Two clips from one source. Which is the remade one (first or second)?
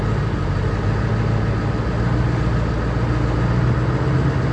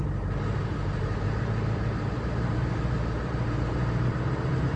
second